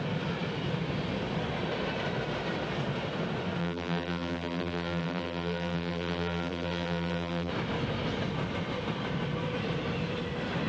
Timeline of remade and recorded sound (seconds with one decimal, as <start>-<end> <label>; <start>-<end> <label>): 0.0-3.6 recorded; 3.6-7.5 remade; 7.5-10.7 recorded